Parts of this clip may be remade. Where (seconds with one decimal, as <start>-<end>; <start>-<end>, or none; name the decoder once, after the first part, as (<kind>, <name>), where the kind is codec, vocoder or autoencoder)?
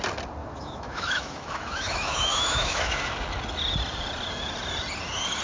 0.4-3.1 (autoencoder, DAC-VAE)